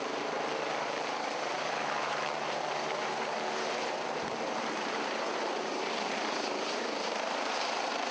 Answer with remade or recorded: remade